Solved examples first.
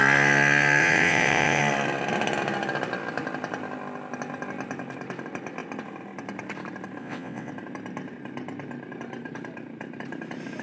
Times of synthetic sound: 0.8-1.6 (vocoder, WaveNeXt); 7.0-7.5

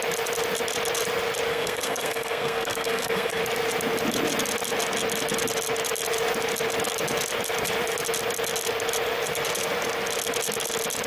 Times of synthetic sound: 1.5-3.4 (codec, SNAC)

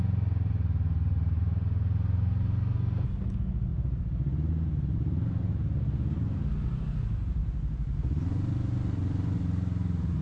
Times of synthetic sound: none